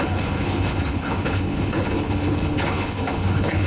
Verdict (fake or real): fake